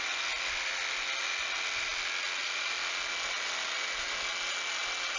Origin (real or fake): real